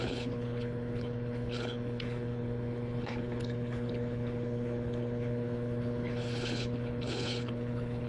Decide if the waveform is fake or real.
fake